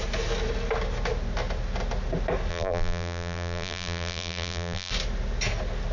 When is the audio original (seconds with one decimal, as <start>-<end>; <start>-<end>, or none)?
0.0-2.5; 4.9-5.9